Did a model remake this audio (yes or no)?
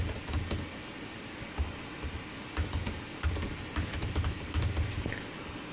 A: no